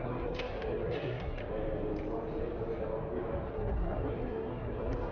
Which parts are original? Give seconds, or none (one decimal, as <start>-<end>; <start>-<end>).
1.4-3.5